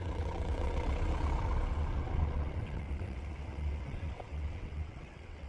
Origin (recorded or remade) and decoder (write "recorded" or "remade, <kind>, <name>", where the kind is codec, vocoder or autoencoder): remade, vocoder, WaveNeXt